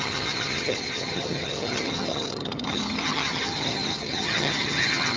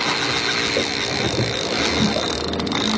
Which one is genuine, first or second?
second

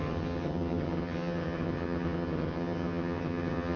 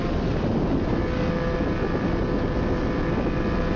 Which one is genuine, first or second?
second